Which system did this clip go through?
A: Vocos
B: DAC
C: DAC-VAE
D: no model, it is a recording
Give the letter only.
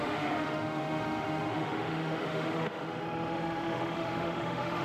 C